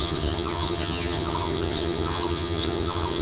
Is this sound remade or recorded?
remade